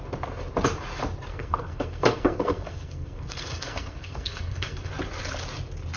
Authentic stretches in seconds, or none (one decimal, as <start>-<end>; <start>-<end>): 0.0-1.3; 4.9-6.0